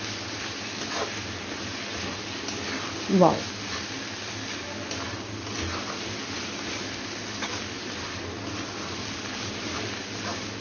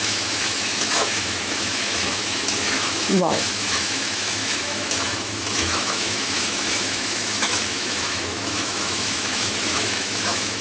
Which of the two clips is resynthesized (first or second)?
second